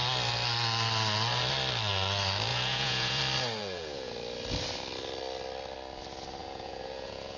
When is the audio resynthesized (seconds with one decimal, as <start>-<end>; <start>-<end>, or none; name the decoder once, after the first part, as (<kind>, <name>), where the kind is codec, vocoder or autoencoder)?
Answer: 2.5-3.2 (vocoder, Vocos); 3.6-4.1; 6.4-7.4